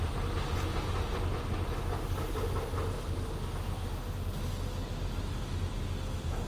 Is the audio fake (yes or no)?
no